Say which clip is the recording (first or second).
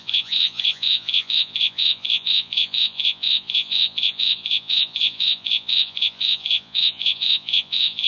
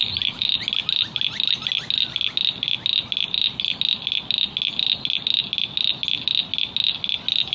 second